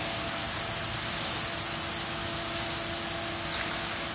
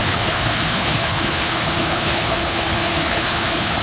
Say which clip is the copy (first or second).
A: second